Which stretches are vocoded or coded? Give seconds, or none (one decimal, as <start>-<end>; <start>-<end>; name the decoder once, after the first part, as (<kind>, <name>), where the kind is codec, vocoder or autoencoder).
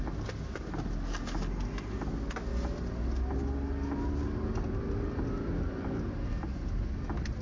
none